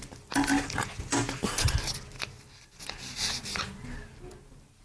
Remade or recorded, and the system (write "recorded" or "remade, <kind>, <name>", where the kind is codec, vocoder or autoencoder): recorded